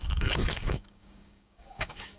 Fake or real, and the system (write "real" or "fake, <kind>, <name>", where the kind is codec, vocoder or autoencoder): fake, codec, DAC